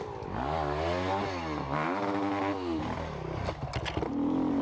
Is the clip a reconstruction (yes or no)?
no